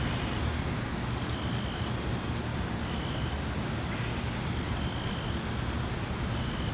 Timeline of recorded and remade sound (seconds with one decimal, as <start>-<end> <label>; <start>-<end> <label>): 0.0-6.7 recorded